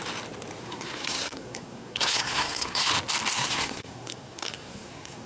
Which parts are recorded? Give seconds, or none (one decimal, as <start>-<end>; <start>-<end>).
0.0-0.6; 2.9-3.3

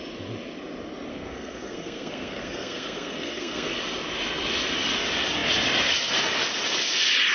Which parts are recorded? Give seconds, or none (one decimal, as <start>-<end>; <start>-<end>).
0.0-1.1; 3.8-7.3

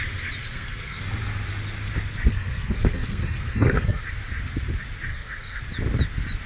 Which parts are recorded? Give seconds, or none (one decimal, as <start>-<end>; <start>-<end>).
0.0-0.4; 1.0-2.3; 4.0-5.1; 5.6-6.5

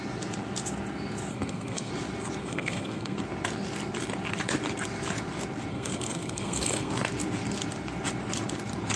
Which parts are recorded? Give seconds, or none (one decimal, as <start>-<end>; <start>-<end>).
0.0-1.3; 1.9-2.4; 3.2-5.7; 6.9-9.0

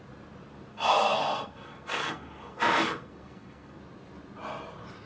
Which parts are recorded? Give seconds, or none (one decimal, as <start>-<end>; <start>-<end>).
0.0-0.7; 3.8-5.1

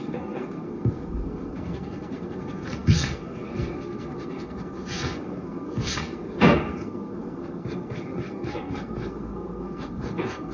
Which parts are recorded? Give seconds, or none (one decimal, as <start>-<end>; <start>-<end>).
none

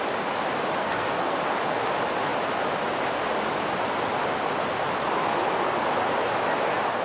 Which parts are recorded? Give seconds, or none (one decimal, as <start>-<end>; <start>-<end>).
0.0-0.8; 1.4-7.0

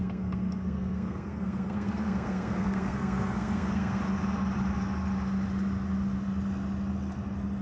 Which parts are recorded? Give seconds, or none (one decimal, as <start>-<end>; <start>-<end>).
4.0-7.6